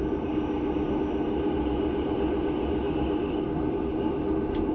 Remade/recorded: recorded